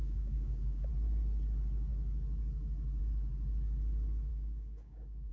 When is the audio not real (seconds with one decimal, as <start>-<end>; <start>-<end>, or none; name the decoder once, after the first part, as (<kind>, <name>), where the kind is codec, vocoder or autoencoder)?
0.0-0.9 (codec, DAC); 4.3-5.3